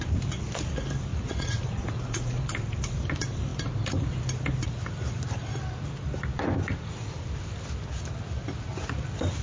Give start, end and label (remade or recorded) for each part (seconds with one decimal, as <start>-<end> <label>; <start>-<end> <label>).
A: 0.0-1.1 recorded; 1.1-2.4 remade; 2.4-9.4 recorded